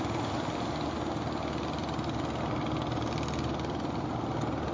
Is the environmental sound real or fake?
real